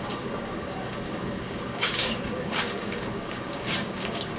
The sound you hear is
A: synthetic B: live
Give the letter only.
A